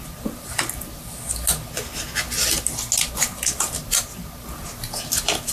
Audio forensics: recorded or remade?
recorded